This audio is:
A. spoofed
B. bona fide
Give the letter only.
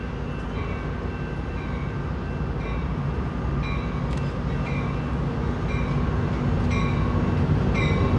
B